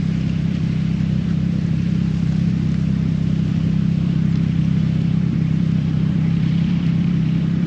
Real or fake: fake